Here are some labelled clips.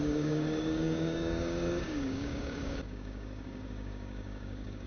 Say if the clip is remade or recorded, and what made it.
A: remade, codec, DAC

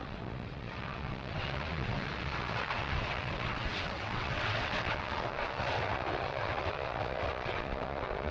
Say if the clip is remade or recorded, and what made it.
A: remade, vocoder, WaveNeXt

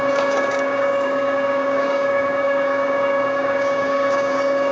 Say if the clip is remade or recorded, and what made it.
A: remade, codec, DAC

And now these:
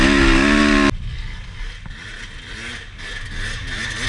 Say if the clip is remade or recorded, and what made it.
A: recorded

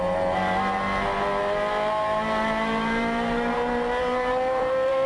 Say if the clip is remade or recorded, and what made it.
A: remade, vocoder, BigVGAN v2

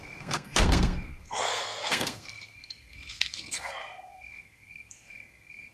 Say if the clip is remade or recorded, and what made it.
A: remade, codec, SNAC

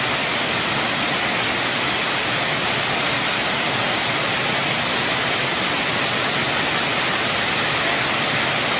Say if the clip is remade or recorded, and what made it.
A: recorded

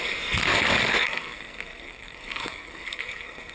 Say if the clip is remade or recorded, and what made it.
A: remade, codec, SNAC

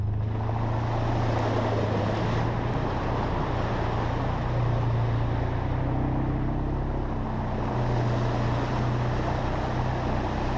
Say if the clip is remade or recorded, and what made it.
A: recorded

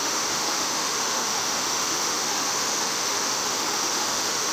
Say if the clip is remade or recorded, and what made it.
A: remade, autoencoder, DAC-VAE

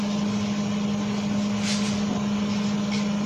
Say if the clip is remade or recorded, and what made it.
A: recorded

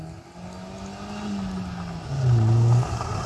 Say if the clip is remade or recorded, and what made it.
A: recorded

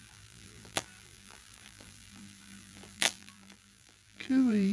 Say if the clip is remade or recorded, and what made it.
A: remade, vocoder, BigVGAN v2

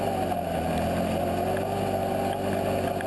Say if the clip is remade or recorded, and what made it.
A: recorded